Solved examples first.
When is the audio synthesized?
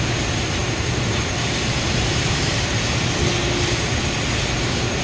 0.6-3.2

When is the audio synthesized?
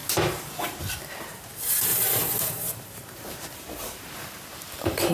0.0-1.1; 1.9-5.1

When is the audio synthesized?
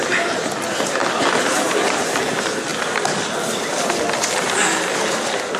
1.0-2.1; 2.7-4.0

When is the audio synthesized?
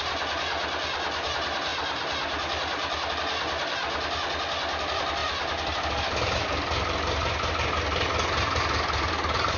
5.2-7.5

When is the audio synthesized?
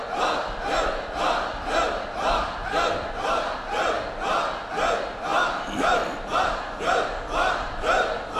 none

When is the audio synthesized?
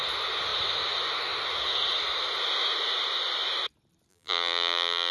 4.1-5.1